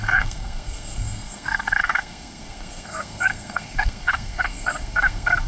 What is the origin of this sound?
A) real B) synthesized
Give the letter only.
B